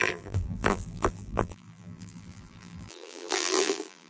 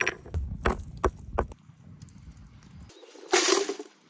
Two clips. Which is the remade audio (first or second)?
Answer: first